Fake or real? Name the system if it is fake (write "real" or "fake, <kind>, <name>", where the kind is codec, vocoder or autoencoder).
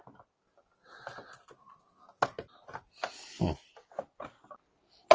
real